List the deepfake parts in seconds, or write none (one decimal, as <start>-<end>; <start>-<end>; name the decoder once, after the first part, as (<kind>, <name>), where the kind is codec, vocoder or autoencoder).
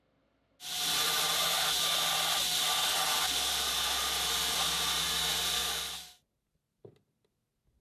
none